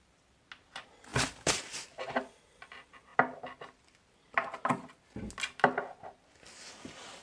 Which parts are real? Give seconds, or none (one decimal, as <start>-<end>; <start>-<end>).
0.0-7.2